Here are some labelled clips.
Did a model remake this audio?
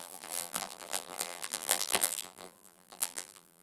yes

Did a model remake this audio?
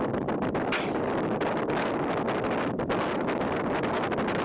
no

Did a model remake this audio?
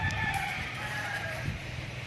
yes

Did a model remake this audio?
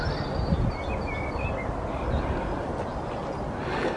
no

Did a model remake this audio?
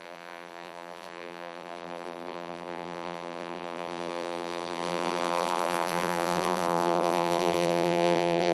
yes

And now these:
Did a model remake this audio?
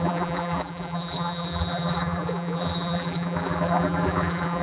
yes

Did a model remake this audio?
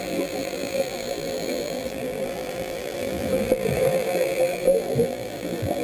yes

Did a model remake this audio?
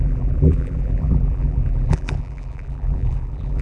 yes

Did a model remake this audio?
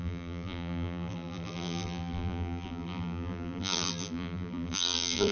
yes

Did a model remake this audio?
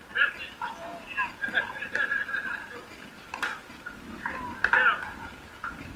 no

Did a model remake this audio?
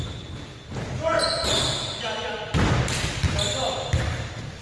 no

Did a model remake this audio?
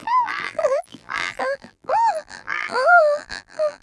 yes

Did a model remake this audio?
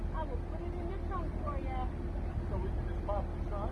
no